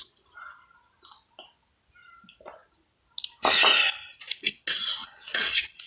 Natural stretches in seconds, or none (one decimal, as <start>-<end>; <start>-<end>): 0.0-5.0